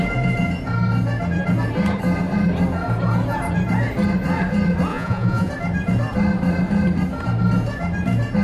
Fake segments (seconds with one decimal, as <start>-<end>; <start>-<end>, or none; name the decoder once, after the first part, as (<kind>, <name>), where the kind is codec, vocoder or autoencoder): 4.9-5.5 (vocoder, Vocos)